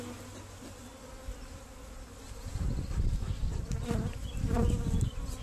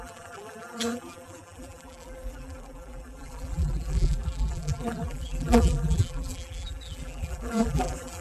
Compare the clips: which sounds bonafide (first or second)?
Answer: first